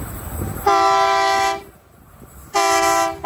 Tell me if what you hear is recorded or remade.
recorded